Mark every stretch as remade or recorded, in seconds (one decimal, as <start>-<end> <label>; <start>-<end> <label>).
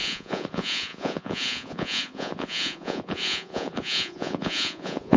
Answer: 0.0-5.2 remade